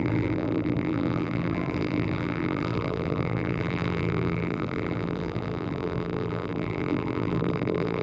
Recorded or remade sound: remade